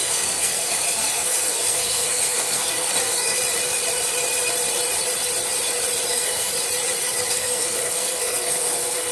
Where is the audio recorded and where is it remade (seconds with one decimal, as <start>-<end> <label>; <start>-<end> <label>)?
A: 0.0-3.4 remade; 3.4-6.1 recorded; 6.1-6.5 remade; 6.5-7.3 recorded; 7.3-9.1 remade